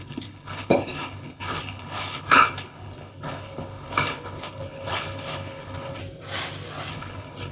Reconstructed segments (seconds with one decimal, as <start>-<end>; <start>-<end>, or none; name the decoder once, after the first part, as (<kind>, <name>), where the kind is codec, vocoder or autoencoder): 0.0-6.0 (codec, HILCodec); 6.9-7.5